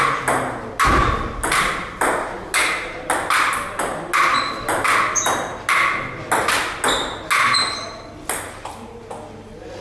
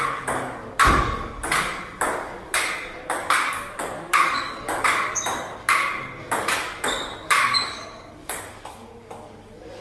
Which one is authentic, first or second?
first